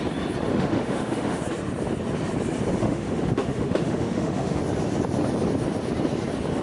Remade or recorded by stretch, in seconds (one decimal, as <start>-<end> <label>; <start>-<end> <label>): 0.0-0.5 recorded; 0.5-1.4 remade; 1.4-2.8 recorded; 2.8-4.6 remade; 4.6-6.6 recorded